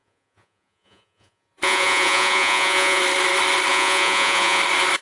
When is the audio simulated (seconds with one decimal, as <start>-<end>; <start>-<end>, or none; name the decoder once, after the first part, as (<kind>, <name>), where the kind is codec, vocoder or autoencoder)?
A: 0.0-3.0 (vocoder, Vocos); 3.7-4.6